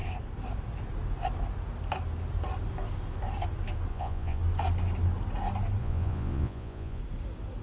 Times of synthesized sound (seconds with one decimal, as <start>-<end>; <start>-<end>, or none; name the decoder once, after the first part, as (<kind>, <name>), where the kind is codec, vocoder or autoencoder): 3.9-4.4 (vocoder, Vocos); 5.8-7.0